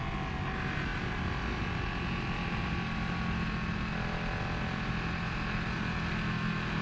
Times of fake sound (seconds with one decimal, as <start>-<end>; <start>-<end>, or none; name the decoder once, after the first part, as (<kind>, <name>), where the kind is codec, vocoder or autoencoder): none